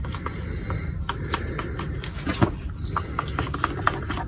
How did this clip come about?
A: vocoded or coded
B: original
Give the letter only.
B